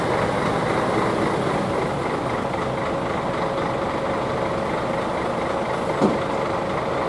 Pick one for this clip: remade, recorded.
recorded